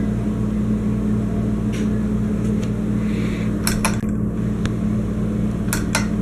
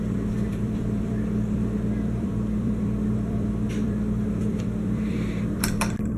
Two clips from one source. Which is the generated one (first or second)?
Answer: second